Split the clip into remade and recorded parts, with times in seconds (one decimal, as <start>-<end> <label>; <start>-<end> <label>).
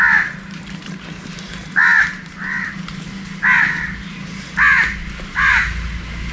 0.0-6.3 recorded